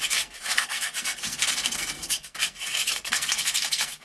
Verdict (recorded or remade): remade